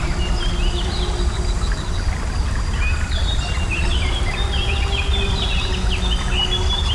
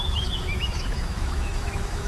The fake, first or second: second